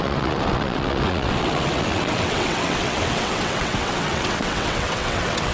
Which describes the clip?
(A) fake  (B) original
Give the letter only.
A